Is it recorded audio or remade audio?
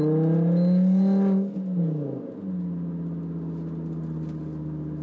recorded